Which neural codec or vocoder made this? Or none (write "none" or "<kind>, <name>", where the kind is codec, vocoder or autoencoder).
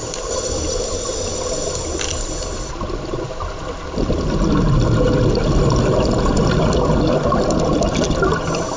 none